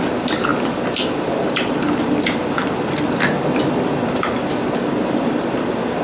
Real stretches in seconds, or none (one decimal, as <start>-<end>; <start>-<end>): 0.0-6.0